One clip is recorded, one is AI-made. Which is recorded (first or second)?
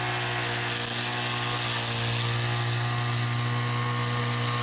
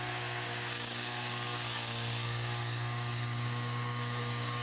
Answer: first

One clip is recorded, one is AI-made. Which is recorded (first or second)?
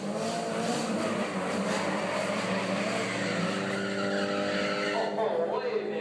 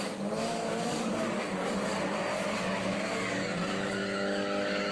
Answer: first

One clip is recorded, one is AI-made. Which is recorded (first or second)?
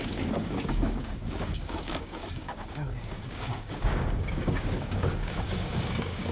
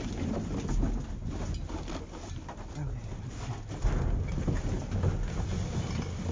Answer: second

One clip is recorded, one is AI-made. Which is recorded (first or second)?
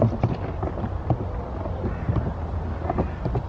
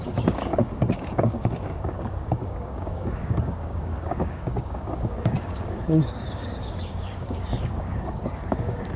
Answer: first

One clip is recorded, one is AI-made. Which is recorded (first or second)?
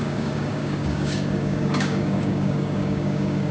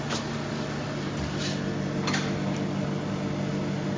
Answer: second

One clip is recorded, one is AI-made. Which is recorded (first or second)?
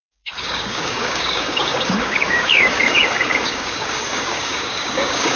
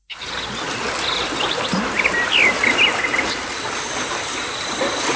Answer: second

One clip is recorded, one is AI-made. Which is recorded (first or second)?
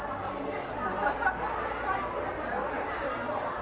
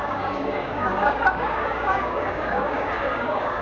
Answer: first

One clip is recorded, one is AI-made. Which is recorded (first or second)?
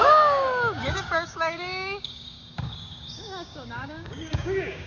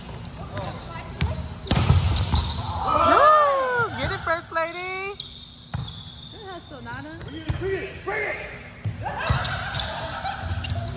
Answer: second